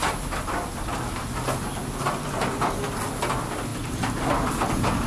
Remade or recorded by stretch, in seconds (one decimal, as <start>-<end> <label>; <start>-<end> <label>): 0.0-5.1 recorded